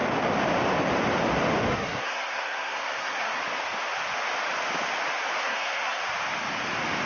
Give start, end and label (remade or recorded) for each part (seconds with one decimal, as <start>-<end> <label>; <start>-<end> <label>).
0.0-1.7 recorded; 1.7-3.4 remade; 3.4-5.4 recorded; 5.4-6.0 remade; 6.0-7.1 recorded